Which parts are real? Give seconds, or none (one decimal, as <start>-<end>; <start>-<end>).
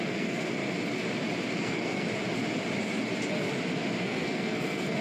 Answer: 0.6-1.5; 2.1-4.0